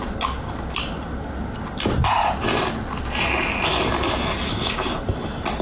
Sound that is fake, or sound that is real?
real